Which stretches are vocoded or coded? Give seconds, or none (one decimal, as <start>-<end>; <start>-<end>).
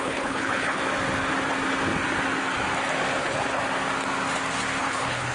0.0-0.8; 3.2-3.6; 4.8-5.3